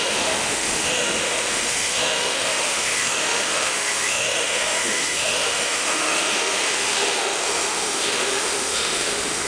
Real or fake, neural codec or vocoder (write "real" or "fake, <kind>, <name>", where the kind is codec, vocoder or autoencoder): fake, autoencoder, DAC-VAE